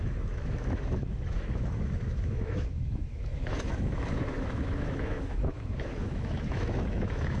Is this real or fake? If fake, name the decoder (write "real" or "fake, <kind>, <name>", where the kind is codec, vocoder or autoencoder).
fake, autoencoder, DAC-VAE